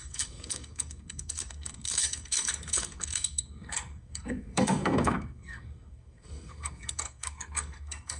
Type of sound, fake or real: fake